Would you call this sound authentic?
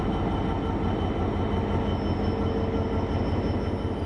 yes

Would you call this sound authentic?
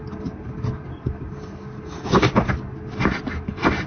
yes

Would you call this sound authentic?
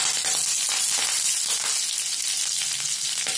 yes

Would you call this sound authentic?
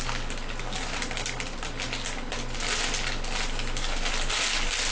yes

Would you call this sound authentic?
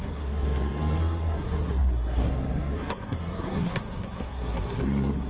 no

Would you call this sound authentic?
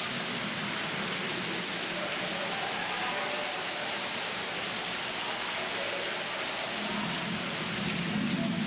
yes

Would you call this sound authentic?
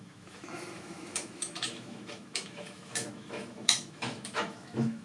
no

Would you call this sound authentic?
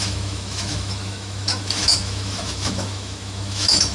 no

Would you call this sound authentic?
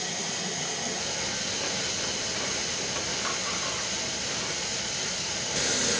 yes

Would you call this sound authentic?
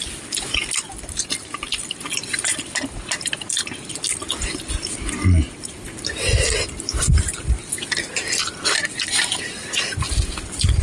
yes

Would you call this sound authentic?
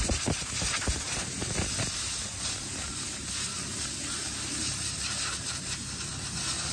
yes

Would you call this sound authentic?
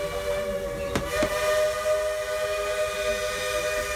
yes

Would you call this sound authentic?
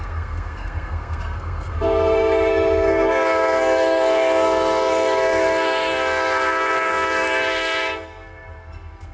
no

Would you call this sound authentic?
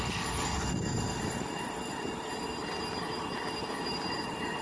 yes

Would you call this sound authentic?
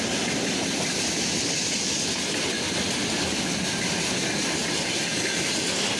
yes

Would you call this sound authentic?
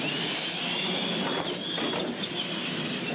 yes